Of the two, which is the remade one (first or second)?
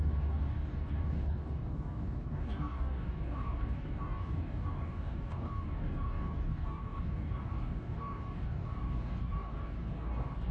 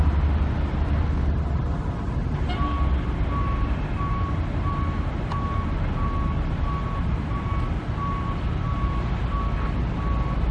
first